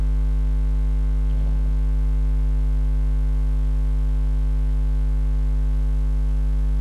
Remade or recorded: recorded